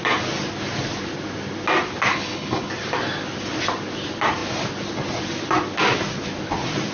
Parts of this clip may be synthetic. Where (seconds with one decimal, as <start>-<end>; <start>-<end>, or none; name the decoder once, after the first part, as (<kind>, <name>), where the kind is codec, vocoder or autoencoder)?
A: 2.1-2.7 (codec, HILCodec)